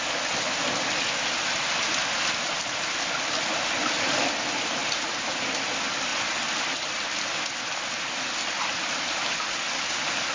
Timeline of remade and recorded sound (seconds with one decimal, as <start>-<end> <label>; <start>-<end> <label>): 0.0-10.3 recorded

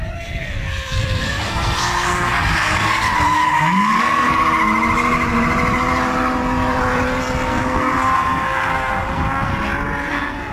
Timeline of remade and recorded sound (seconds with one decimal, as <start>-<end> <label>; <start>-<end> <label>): 0.0-4.4 remade; 4.4-7.2 recorded; 7.2-9.5 remade; 9.5-10.1 recorded; 10.1-10.5 remade

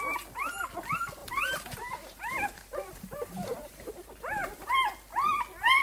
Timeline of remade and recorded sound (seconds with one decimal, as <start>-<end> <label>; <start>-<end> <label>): 0.0-1.2 recorded; 1.2-4.7 remade; 4.7-5.8 recorded

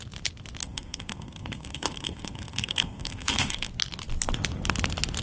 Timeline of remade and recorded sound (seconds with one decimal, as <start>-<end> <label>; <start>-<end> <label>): 0.0-0.6 recorded; 0.6-3.7 remade; 3.7-5.2 recorded

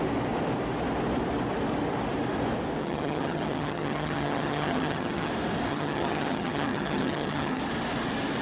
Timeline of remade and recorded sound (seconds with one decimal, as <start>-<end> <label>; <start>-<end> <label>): 0.0-2.8 recorded; 2.8-5.3 remade; 5.3-5.7 recorded; 5.7-7.6 remade; 7.6-8.4 recorded

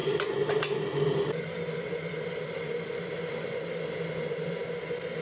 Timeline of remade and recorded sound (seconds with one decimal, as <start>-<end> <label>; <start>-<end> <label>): 0.0-5.2 recorded

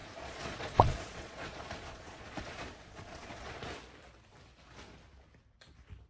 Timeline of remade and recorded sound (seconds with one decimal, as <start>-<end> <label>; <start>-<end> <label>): 0.0-3.7 remade; 3.7-6.1 recorded

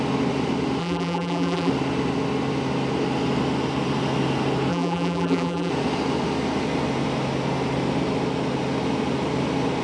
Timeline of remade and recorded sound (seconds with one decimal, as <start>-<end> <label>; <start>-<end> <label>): 0.0-0.8 recorded; 0.8-1.7 remade; 1.7-4.7 recorded; 4.7-5.7 remade; 5.7-9.8 recorded